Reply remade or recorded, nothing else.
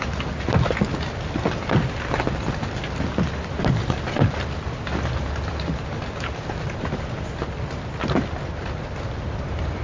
recorded